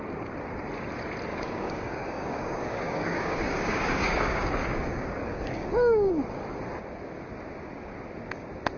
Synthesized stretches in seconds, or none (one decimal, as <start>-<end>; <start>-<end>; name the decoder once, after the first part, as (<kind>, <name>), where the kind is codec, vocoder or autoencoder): 1.3-6.1 (codec, DAC)